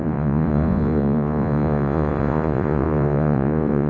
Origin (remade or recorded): remade